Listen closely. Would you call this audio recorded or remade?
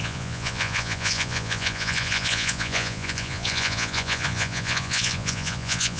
remade